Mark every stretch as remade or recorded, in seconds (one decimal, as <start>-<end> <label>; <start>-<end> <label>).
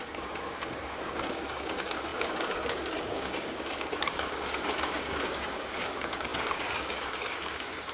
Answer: 0.0-7.9 remade